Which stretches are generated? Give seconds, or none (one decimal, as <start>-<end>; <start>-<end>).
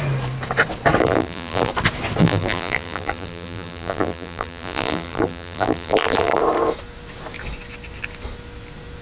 1.0-1.7; 2.2-6.4